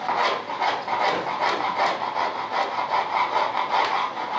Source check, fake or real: real